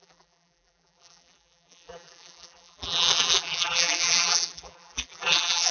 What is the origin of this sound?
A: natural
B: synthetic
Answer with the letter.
B